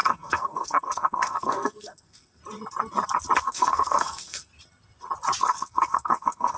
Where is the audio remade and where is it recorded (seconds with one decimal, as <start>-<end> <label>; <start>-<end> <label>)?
0.0-2.4 remade; 2.4-3.4 recorded; 3.4-4.5 remade; 4.5-5.4 recorded; 5.4-6.6 remade